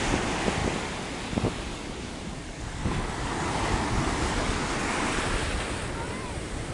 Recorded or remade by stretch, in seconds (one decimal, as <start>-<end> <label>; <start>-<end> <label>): 0.0-1.7 recorded; 1.7-5.2 remade; 5.2-6.7 recorded